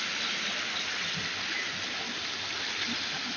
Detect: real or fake real